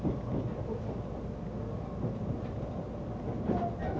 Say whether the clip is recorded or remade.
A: recorded